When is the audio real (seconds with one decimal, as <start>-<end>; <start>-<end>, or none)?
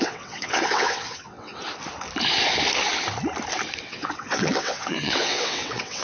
1.5-3.8